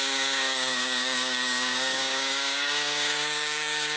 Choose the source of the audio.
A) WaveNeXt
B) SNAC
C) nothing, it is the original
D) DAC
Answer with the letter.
D